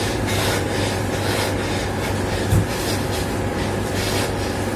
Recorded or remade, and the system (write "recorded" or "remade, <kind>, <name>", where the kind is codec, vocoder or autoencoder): recorded